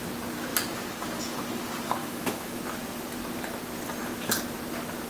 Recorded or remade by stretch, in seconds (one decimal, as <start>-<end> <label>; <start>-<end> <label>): 0.0-2.0 recorded; 2.0-2.6 remade; 2.6-5.1 recorded